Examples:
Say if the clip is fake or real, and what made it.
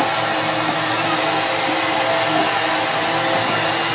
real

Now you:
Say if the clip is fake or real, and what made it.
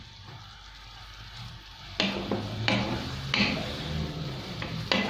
real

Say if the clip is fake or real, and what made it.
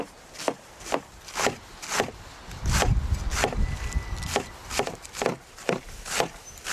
real